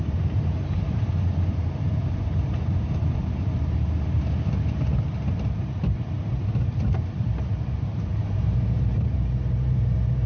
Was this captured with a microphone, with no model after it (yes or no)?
no